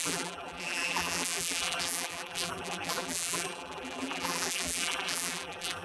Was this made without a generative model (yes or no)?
no